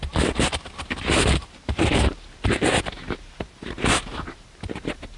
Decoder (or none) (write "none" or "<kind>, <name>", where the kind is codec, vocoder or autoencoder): vocoder, BigVGAN v2